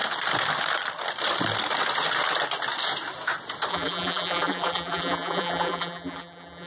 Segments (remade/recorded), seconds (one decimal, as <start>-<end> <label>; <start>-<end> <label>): 0.0-3.7 recorded; 3.7-6.7 remade